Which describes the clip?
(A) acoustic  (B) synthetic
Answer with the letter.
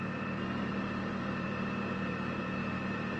B